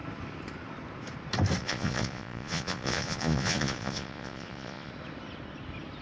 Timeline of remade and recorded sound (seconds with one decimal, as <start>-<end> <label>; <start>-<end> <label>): 0.0-1.6 recorded; 1.6-4.9 remade; 4.9-6.0 recorded